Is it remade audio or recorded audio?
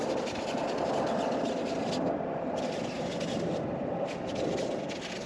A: recorded